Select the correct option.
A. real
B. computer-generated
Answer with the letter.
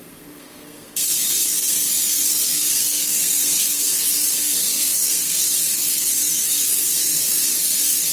B